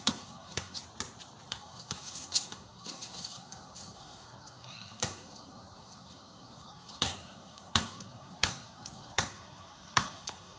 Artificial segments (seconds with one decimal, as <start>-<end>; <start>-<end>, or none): 0.0-0.8; 1.5-10.6